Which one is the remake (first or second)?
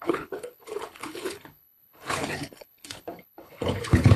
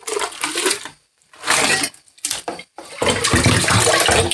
first